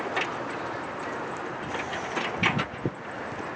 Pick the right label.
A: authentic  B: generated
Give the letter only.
A